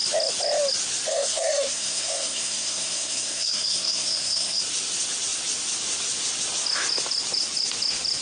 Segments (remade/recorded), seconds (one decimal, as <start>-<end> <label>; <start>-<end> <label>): 0.0-1.1 recorded; 1.1-4.6 remade; 4.6-8.2 recorded